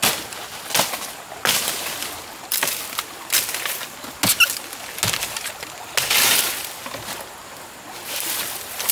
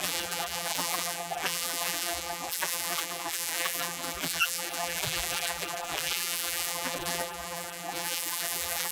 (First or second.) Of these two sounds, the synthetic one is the second